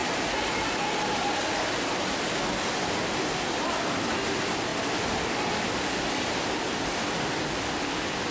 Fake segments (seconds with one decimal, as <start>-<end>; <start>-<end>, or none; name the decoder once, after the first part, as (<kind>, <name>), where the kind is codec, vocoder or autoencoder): 4.7-7.0 (vocoder, BigVGAN v2)

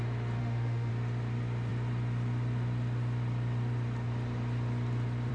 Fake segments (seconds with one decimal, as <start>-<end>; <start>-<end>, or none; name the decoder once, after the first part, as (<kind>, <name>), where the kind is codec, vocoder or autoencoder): 0.4-0.9 (autoencoder, DAC-VAE)

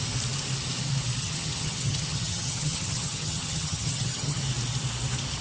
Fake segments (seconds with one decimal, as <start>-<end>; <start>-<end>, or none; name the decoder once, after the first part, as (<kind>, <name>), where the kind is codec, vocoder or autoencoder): 1.2-4.4 (vocoder, HiFi-GAN)

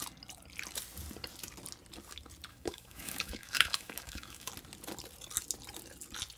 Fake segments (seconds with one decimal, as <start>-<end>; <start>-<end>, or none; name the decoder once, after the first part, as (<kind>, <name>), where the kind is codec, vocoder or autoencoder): 2.5-4.5 (autoencoder, DAC-VAE)

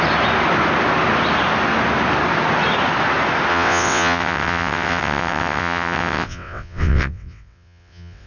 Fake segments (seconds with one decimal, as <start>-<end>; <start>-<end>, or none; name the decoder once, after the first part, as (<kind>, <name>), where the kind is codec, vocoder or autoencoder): 3.5-8.3 (vocoder, WaveNeXt)

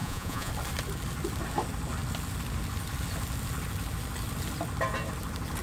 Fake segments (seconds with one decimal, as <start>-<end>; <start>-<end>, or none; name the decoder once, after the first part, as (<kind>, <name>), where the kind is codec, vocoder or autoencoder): 0.0-0.5 (vocoder, Vocos)